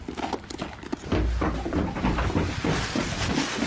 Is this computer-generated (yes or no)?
no